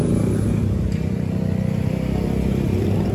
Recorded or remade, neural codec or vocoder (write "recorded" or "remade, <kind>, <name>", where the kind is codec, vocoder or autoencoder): recorded